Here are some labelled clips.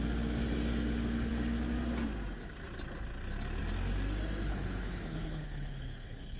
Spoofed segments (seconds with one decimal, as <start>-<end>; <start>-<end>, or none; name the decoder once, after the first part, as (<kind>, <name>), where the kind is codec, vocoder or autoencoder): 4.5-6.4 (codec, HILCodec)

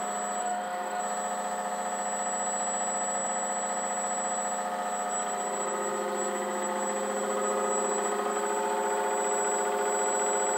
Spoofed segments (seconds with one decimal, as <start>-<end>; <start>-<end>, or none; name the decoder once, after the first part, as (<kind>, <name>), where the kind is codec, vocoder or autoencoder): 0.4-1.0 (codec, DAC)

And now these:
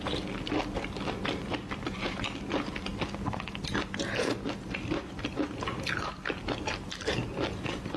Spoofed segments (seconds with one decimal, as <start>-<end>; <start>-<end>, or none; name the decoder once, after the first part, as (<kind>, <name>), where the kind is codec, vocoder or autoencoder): none

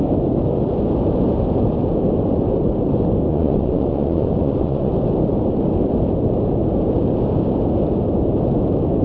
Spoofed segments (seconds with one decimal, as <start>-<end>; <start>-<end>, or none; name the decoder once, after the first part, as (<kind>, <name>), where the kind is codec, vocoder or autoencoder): 3.3-4.9 (vocoder, Vocos)